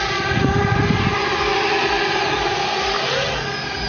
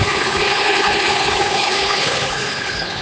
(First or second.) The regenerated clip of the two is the second